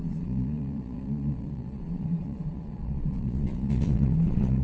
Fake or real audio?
fake